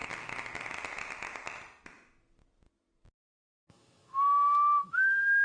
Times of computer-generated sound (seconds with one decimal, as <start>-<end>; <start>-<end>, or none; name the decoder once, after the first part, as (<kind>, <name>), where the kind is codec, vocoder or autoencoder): 3.1-5.4 (autoencoder, DAC-VAE)